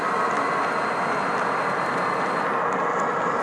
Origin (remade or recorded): recorded